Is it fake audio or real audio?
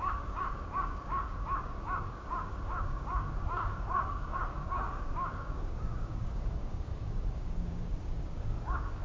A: fake